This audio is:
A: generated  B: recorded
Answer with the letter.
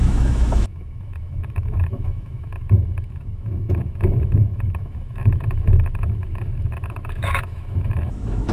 A